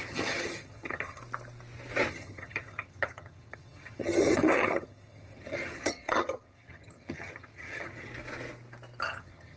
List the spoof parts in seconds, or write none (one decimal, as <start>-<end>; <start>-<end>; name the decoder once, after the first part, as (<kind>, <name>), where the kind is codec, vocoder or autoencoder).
0.0-1.2 (vocoder, HiFi-GAN); 2.1-8.1; 9.0-9.6